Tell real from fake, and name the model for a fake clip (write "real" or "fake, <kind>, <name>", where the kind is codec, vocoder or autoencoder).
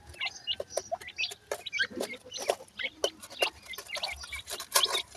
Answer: real